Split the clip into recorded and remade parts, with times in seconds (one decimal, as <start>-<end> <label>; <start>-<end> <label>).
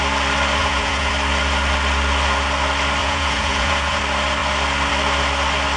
0.0-0.6 recorded; 0.6-1.1 remade; 1.1-3.0 recorded; 3.0-4.0 remade; 4.0-5.8 recorded